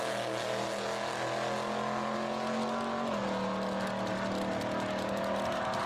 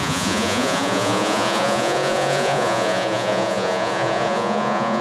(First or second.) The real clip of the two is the first